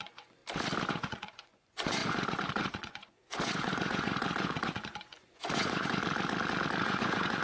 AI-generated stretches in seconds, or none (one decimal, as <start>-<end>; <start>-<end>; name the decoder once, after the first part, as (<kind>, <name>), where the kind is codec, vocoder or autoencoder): 0.0-0.4 (vocoder, Vocos); 0.9-6.0; 6.8-7.4